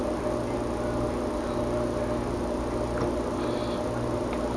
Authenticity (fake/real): real